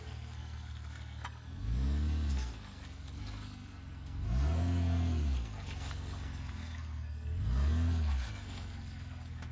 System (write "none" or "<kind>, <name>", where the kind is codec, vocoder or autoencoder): codec, SNAC